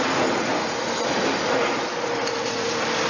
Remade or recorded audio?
remade